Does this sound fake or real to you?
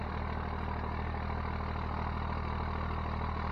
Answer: real